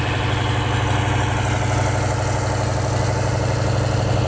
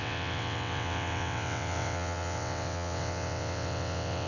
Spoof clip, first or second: second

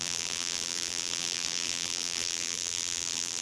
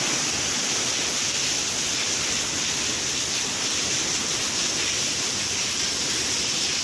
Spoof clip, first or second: first